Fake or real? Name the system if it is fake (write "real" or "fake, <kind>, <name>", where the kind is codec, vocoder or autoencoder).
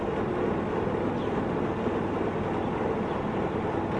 real